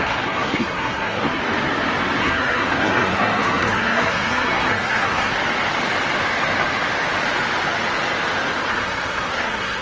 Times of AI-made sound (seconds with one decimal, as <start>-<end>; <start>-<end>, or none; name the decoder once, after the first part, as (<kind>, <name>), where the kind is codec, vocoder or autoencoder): 0.0-1.4 (codec, SNAC); 2.2-5.3; 8.7-9.8